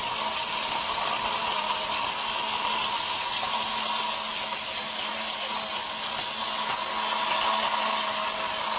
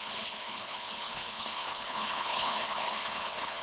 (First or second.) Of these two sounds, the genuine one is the first